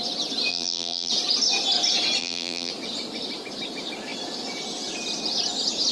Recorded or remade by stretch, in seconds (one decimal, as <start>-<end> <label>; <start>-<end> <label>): 0.0-0.5 recorded; 0.5-1.1 remade; 1.1-2.2 recorded; 2.2-2.7 remade; 2.7-5.9 recorded